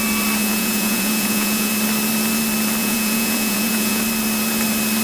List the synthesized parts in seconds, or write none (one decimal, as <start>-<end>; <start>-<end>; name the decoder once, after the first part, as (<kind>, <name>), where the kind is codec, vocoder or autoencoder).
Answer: 0.4-1.7 (vocoder, Vocos); 2.8-4.0